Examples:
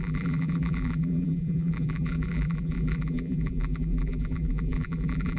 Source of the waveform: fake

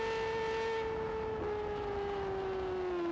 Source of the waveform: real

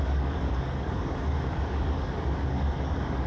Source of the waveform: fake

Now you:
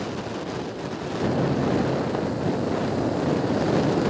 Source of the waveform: real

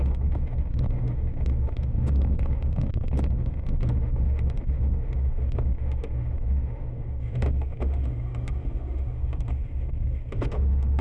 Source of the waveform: fake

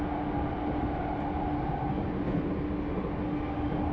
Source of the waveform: real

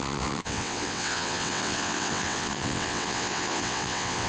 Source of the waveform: fake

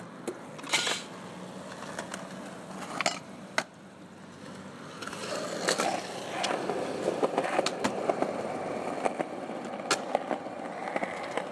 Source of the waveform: real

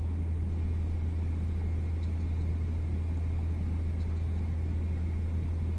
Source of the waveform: real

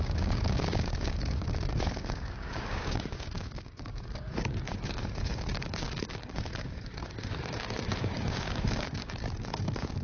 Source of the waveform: fake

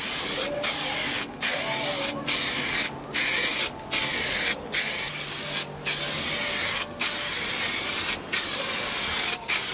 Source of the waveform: real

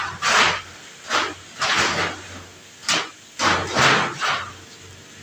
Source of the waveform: real